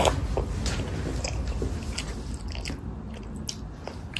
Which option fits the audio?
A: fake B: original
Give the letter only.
B